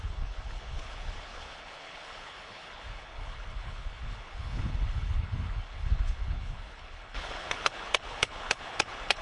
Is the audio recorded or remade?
remade